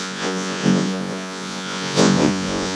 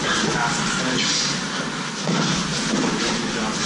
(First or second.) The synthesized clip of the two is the first